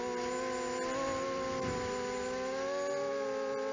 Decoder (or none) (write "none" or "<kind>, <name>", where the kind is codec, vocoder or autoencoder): none